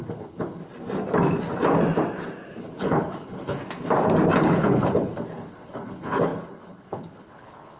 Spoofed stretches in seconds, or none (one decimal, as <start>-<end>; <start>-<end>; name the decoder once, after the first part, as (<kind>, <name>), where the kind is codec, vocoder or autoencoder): 0.0-0.6 (codec, HILCodec); 2.6-3.6; 4.4-7.8